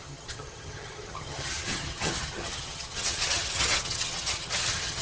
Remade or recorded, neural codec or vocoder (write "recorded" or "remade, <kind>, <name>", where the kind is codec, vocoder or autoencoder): remade, vocoder, HiFi-GAN